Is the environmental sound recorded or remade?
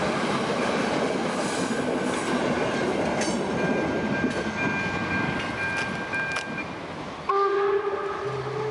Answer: recorded